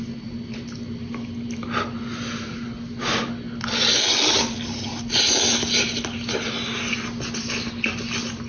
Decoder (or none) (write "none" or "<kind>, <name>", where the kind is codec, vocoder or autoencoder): none